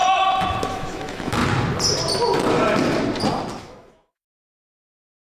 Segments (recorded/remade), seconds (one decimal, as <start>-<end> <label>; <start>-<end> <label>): 0.0-0.7 recorded; 0.7-1.4 remade; 1.4-3.6 recorded; 3.6-5.3 remade